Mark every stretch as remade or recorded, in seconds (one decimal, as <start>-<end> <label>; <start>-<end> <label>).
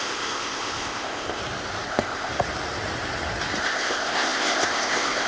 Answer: 0.0-1.4 remade; 1.4-1.9 recorded; 1.9-2.3 remade; 2.3-3.6 recorded; 3.6-5.3 remade